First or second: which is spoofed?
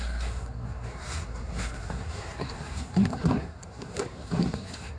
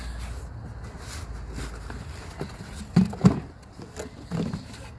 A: first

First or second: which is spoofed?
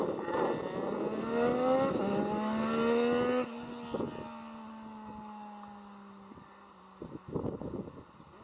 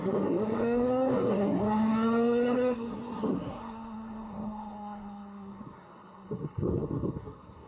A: second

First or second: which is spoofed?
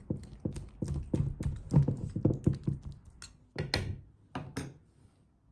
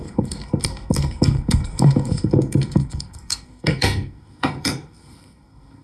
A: second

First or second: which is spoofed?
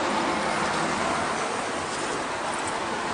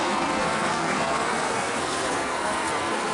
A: second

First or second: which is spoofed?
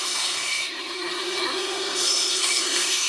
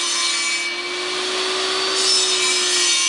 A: first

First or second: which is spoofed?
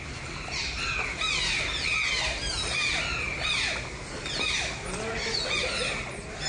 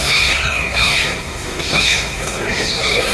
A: second